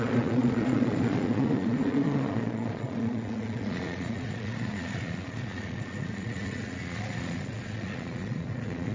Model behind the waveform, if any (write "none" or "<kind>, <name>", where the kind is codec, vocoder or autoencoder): vocoder, Vocos